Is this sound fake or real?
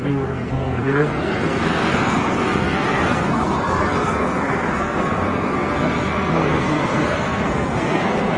fake